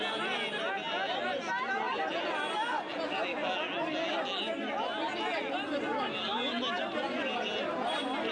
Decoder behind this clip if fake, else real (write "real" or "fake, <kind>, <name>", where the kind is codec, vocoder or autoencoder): real